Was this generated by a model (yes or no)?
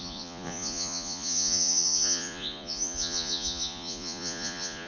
yes